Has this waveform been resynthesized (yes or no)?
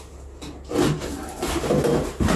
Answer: no